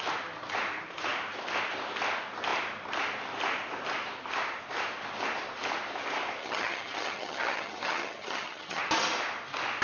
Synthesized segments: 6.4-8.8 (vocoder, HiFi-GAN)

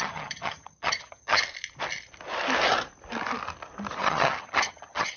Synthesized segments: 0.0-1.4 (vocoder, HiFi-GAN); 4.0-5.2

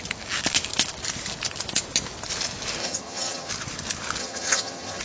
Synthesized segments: 2.8-3.5 (vocoder, HiFi-GAN); 4.2-5.0

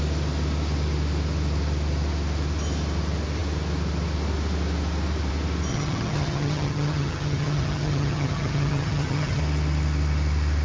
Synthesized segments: 5.7-9.4 (vocoder, HiFi-GAN)

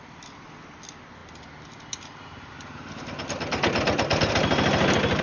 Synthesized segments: none